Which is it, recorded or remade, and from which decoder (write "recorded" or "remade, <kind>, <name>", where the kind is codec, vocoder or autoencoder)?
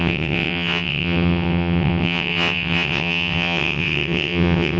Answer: remade, vocoder, WaveNeXt